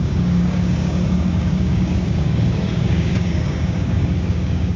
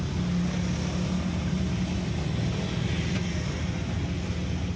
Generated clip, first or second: first